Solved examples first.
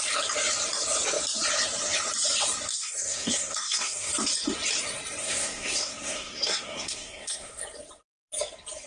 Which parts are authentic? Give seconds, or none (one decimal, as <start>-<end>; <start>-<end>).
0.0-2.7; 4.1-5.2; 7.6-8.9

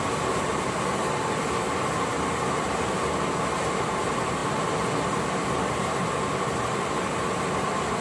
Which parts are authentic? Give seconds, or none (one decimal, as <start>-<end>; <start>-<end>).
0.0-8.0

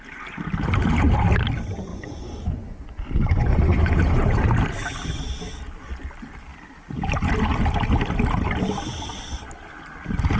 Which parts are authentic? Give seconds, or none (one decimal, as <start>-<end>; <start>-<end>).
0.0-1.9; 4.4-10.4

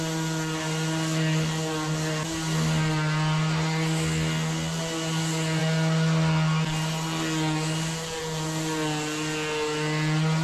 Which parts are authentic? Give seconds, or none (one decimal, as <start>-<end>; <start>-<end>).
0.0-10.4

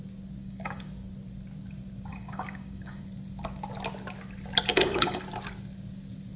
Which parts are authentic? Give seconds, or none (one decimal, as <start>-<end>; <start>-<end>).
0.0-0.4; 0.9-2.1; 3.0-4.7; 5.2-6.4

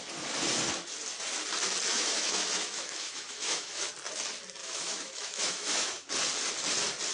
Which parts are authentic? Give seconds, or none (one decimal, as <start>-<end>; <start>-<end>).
0.0-1.9; 3.9-4.6; 6.1-7.1

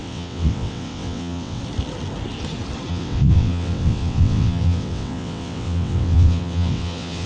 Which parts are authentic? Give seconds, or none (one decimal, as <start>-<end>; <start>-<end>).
1.6-2.9